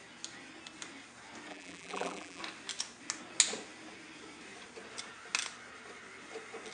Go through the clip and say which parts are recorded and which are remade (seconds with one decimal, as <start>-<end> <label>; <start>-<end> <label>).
0.0-1.5 recorded; 1.5-2.4 remade; 2.4-6.7 recorded